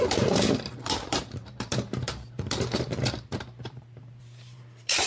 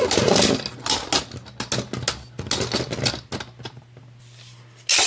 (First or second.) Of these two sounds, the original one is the second